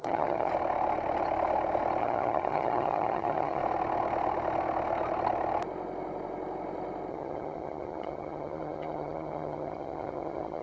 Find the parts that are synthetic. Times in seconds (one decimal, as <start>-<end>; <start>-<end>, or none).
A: 0.0-0.5; 2.0-3.6; 7.1-10.6

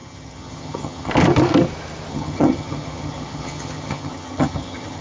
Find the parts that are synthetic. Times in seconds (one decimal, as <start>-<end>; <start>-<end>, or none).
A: 0.0-1.1; 2.1-5.0

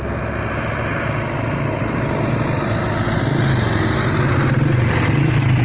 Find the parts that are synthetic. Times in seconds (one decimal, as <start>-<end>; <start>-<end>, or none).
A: none

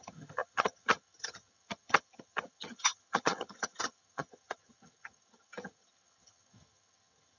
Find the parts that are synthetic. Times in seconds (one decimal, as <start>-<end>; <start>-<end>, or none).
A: 0.0-7.4